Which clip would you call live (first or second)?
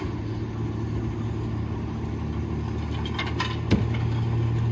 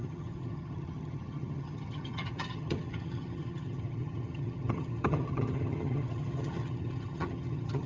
first